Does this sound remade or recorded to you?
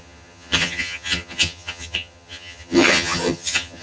remade